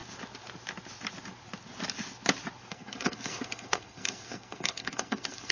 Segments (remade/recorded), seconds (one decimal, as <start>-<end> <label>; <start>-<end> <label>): 0.0-2.7 recorded; 2.7-5.5 remade